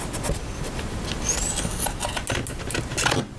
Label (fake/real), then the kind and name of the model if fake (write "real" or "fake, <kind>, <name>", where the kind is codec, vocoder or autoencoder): real